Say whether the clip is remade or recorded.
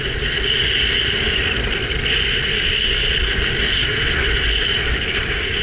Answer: recorded